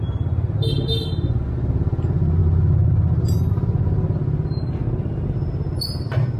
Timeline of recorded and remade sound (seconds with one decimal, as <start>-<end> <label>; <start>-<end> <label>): 0.0-6.4 recorded

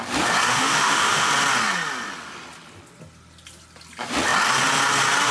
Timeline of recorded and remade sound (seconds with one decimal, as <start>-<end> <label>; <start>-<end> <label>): 0.0-0.5 recorded; 0.5-1.3 remade; 1.3-5.3 recorded

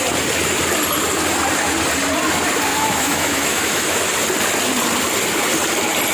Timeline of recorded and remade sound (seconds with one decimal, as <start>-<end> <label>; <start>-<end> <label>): 0.0-2.7 recorded; 2.7-4.0 remade; 4.0-6.1 recorded

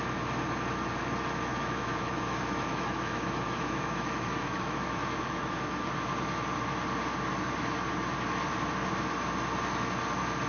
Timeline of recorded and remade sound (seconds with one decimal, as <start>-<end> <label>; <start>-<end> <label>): 0.0-1.5 recorded; 1.5-5.9 remade; 5.9-10.5 recorded